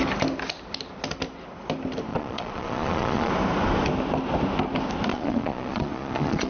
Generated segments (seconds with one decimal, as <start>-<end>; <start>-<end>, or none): 2.1-3.3; 5.1-6.5